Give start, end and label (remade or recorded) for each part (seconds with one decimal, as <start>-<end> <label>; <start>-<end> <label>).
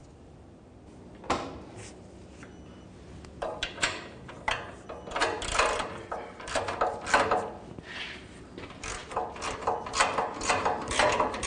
0.0-11.5 recorded